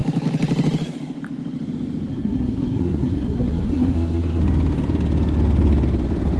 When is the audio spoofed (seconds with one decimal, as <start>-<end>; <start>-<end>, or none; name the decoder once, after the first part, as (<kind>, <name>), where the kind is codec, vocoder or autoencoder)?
2.1-4.4 (codec, SNAC)